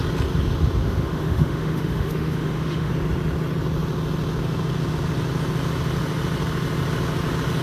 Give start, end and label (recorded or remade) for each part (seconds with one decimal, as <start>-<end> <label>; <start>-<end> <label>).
0.0-0.8 recorded; 0.8-2.9 remade; 2.9-7.6 recorded